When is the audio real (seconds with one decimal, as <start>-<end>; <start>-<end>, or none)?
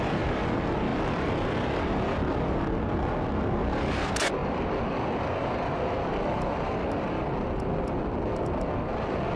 0.0-9.4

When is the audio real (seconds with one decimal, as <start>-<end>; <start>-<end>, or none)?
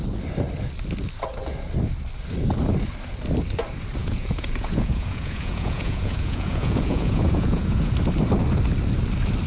0.0-4.0; 7.9-9.5